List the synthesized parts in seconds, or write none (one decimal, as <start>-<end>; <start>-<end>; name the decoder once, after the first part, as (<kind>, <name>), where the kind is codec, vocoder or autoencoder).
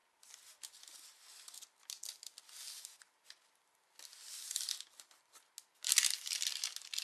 none